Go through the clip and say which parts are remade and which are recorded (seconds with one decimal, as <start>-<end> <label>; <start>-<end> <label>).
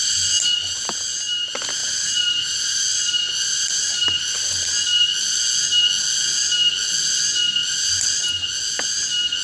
0.0-1.8 recorded; 1.8-5.4 remade; 5.4-7.6 recorded; 7.6-8.3 remade; 8.3-9.4 recorded